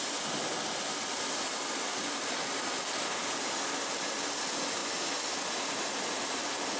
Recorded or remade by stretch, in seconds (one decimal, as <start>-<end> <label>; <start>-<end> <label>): 0.0-6.8 recorded